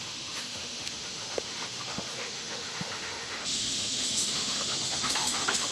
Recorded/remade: remade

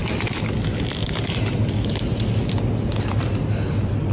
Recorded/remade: recorded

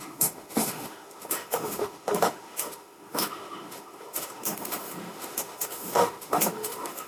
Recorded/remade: remade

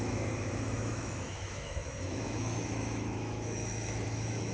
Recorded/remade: remade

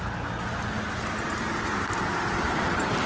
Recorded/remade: recorded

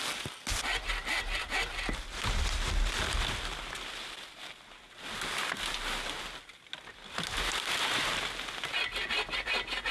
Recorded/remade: recorded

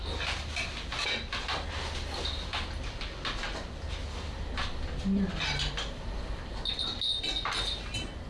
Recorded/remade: recorded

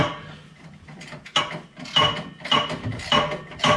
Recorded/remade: recorded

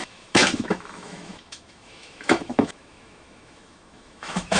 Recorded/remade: remade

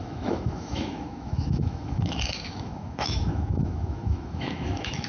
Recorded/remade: remade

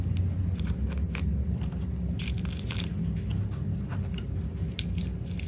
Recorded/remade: recorded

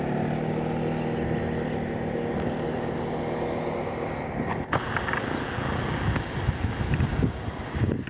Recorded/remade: recorded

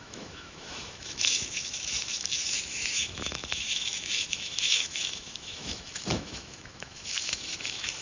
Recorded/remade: remade